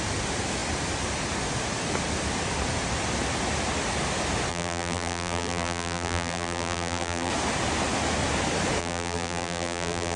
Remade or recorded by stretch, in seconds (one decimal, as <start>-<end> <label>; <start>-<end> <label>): 0.0-4.5 recorded; 4.5-7.3 remade; 7.3-8.8 recorded; 8.8-10.2 remade

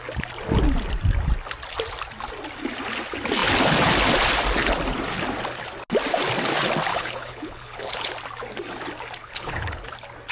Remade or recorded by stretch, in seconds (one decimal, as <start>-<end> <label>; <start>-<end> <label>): 0.0-6.9 recorded; 6.9-8.1 remade; 8.1-9.2 recorded; 9.2-9.9 remade; 9.9-10.3 recorded

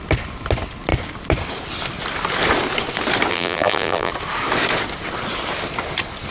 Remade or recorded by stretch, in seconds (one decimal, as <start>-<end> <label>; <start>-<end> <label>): 0.0-3.3 recorded; 3.3-4.1 remade; 4.1-6.3 recorded

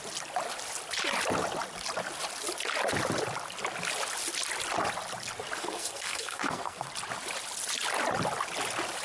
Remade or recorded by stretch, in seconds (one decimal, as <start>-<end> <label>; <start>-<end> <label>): 0.0-5.6 recorded; 5.6-6.9 remade; 6.9-9.0 recorded

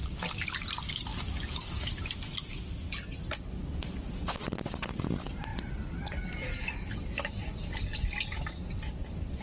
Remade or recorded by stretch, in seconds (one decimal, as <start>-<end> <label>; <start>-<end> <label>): 0.0-9.4 recorded

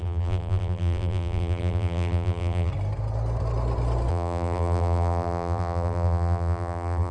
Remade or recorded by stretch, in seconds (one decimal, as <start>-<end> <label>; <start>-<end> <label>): 0.0-2.7 remade; 2.7-4.1 recorded; 4.1-7.1 remade